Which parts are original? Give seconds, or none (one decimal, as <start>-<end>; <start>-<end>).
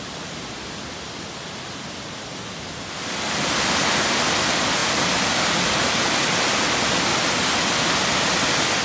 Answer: 0.0-8.8